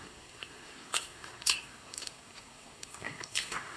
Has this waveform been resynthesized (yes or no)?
yes